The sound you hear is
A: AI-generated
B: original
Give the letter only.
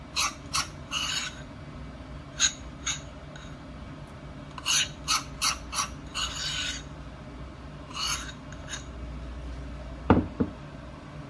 B